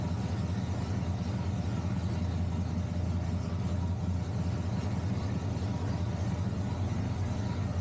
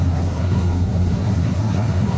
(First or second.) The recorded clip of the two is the first